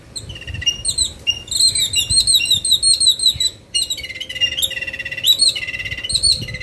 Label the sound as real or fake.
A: real